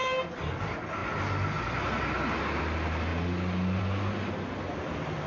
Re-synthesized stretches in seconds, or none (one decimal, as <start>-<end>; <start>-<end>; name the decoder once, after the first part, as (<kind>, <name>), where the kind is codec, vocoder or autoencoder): none